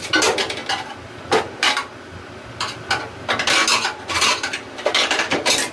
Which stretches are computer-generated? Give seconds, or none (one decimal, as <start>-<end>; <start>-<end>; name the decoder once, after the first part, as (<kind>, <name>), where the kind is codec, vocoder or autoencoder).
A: none